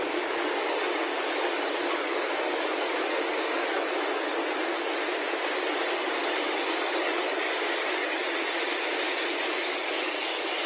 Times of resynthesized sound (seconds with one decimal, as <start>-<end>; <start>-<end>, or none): 0.0-4.4; 5.9-8.2; 9.6-10.7